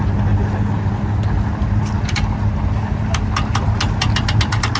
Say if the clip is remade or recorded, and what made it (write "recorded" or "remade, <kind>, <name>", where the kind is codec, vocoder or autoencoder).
recorded